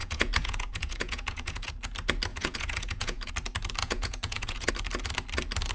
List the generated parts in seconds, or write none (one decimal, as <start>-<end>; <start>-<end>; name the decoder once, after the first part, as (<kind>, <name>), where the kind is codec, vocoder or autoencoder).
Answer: 0.0-1.7 (vocoder, Vocos); 2.3-3.3; 3.8-4.7